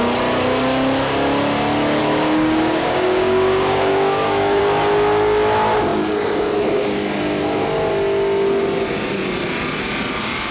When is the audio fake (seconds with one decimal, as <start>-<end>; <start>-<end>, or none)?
2.0-4.6